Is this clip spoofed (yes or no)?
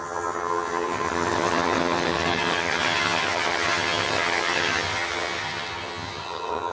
yes